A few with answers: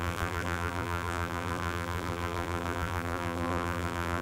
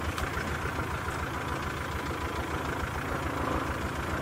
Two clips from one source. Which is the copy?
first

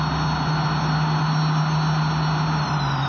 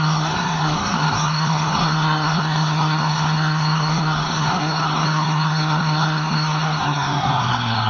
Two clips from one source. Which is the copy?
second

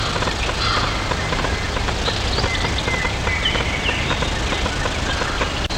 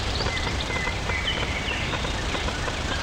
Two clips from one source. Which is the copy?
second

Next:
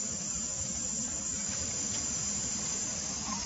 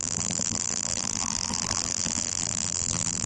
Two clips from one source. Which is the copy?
second